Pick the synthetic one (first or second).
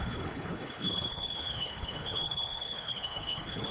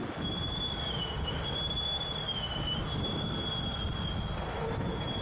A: first